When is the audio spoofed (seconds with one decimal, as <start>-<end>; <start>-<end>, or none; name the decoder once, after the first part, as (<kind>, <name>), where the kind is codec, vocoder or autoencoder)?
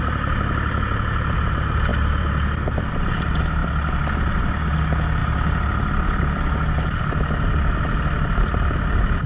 1.9-2.9 (vocoder, BigVGAN v2)